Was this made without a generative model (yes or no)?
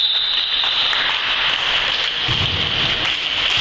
yes